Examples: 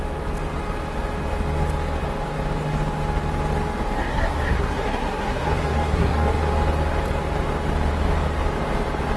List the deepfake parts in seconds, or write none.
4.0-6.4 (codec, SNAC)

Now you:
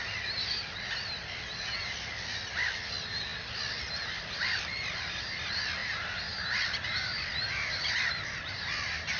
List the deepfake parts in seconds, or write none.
none

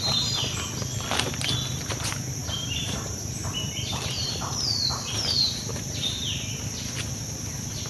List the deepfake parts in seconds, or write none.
2.4-4.3 (vocoder, BigVGAN v2)